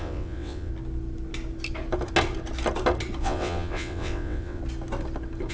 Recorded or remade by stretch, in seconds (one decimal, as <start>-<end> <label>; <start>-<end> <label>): 0.0-0.7 remade; 0.7-3.2 recorded; 3.2-4.6 remade; 4.6-5.5 recorded